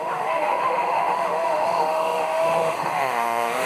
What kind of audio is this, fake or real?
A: fake